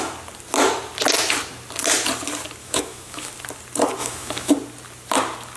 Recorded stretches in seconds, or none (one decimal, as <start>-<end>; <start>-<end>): 0.0-2.6; 3.3-4.0; 4.5-5.6